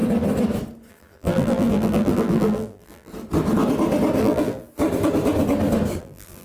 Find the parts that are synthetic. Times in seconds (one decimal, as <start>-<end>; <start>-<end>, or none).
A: 0.9-3.1; 4.2-4.7; 6.0-6.4